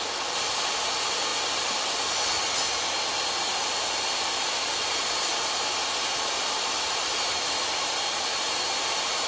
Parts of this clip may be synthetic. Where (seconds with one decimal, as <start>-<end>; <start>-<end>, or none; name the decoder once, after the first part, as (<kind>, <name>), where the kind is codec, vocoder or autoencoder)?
3.5-5.3 (vocoder, BigVGAN v2)